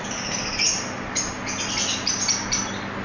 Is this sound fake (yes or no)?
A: no